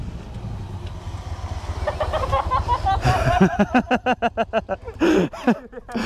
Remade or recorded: recorded